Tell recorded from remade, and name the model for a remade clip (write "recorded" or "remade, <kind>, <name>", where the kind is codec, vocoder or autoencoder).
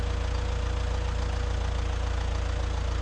recorded